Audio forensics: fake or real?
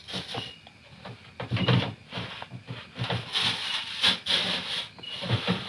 real